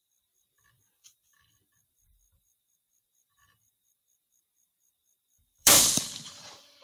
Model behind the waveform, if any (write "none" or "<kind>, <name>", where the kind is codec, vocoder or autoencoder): vocoder, BigVGAN v2